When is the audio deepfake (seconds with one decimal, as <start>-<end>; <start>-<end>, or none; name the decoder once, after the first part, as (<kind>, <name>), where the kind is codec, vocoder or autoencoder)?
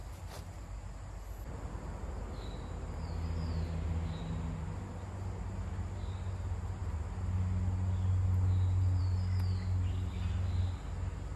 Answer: none